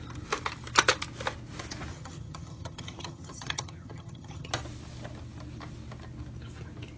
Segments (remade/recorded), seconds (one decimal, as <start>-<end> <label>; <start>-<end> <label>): 0.0-1.9 recorded; 1.9-4.5 remade; 4.5-7.0 recorded